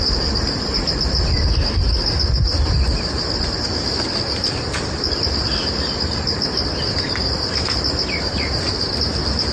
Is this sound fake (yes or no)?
no